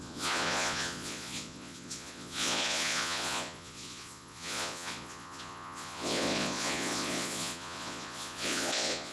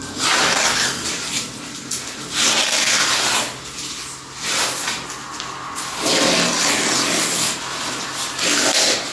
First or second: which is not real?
first